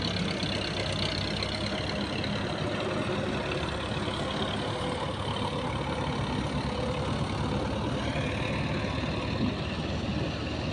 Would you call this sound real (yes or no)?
yes